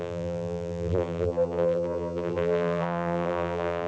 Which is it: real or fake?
fake